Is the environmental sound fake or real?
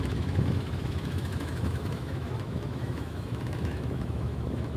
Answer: fake